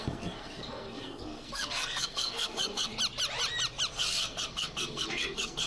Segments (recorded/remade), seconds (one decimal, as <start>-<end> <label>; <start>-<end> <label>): 0.0-2.9 remade; 2.9-3.9 recorded; 3.9-5.7 remade